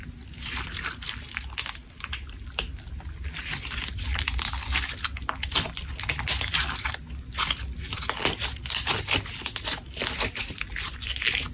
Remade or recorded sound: recorded